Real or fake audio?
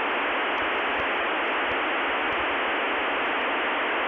real